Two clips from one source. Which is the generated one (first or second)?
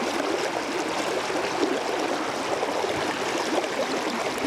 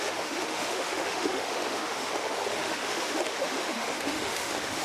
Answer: second